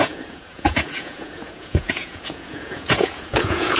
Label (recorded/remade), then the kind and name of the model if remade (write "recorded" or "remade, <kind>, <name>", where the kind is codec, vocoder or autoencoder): remade, vocoder, Vocos